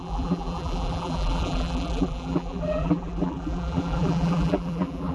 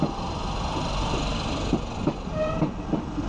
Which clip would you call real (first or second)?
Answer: second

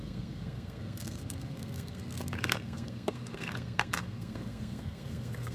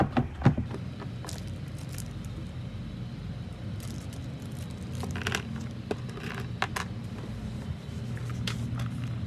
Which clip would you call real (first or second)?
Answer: second